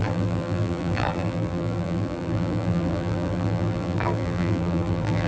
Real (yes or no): no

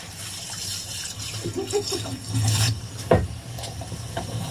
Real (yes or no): no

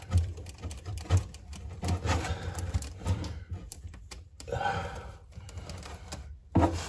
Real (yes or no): no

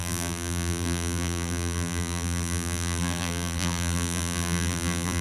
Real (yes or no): no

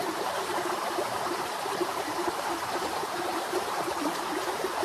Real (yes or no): no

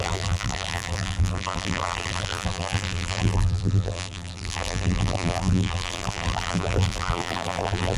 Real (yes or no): no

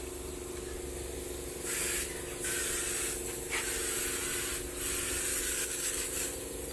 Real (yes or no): yes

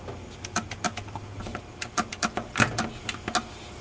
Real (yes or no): yes